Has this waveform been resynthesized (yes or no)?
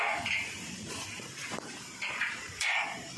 yes